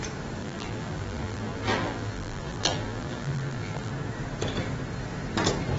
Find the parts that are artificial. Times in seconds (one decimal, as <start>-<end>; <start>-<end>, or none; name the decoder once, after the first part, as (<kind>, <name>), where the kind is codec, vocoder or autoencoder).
0.4-3.9 (vocoder, BigVGAN v2)